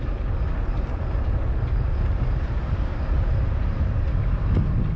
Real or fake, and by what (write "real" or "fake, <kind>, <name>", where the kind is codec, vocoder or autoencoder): real